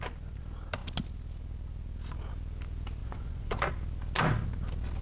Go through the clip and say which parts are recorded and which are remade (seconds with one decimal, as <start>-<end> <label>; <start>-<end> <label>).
0.0-3.0 recorded; 3.0-3.7 remade; 3.7-5.0 recorded